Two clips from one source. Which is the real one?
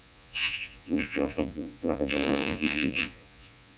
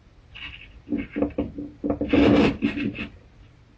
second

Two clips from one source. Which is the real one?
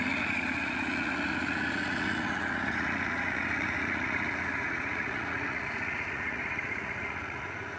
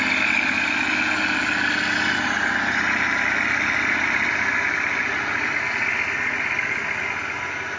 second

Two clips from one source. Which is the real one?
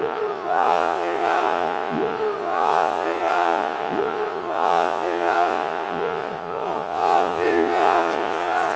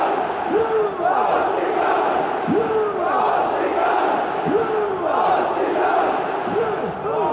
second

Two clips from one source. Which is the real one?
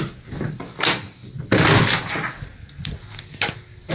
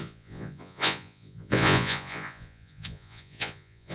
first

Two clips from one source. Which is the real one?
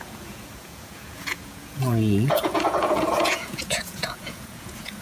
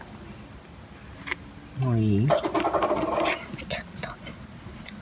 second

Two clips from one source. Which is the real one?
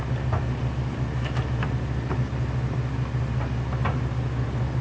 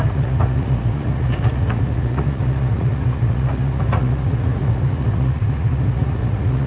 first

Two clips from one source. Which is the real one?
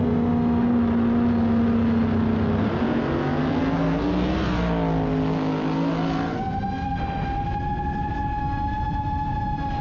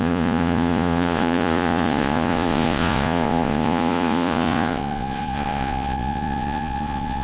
first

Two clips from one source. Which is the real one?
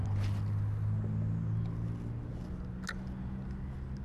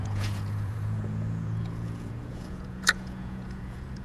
first